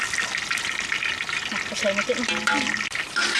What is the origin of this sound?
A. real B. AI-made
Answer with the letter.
A